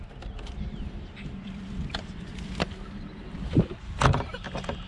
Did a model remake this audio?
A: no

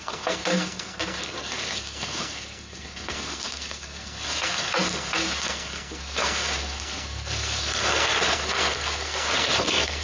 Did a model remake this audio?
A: yes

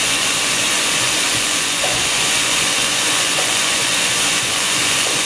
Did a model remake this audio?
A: yes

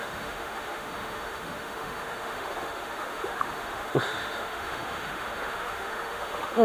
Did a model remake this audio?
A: yes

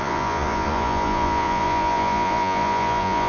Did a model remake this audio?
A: yes